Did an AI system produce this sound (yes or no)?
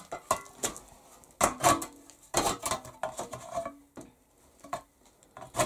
no